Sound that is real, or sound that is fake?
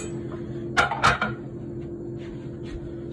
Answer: real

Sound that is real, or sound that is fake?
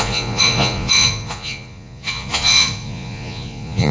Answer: fake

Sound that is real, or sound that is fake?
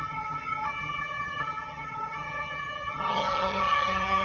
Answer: fake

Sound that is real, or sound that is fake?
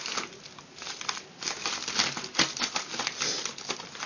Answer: real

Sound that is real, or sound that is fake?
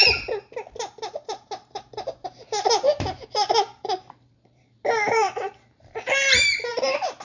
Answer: fake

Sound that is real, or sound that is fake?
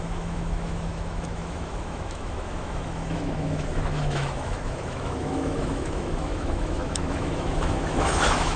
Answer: fake